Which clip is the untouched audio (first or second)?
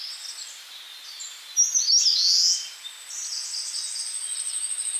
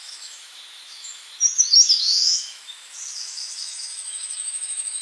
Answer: first